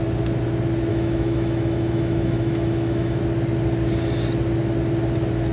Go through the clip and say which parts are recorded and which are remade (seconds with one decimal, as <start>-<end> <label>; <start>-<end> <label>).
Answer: 0.0-0.9 recorded; 0.9-3.2 remade; 3.2-5.5 recorded